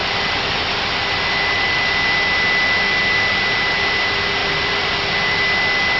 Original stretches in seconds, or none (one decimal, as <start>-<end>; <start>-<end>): 0.9-4.4; 5.4-6.0